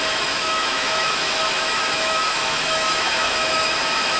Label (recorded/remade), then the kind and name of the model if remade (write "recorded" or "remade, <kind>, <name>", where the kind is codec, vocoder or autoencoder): remade, autoencoder, DAC-VAE